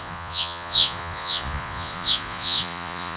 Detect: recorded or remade remade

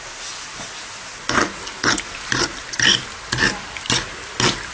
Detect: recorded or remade recorded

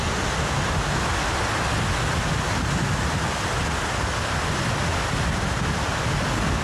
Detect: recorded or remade recorded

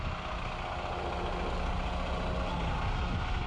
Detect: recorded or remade recorded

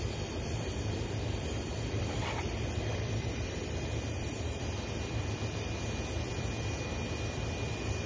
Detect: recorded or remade remade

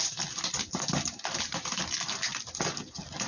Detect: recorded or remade remade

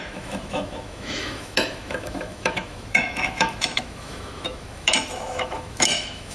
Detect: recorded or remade remade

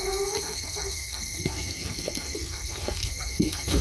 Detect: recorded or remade remade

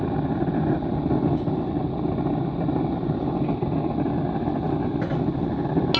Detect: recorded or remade recorded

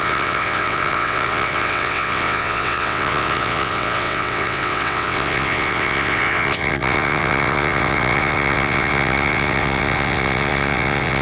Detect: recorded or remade remade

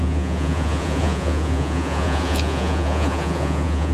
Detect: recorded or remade remade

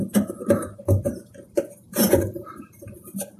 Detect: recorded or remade remade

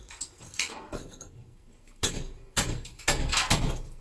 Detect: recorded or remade remade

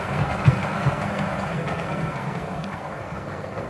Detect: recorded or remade remade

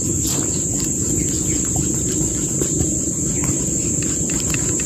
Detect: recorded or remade remade